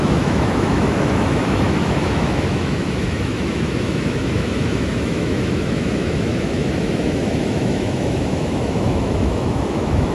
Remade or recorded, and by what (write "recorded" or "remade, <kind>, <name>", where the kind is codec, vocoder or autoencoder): remade, autoencoder, DAC-VAE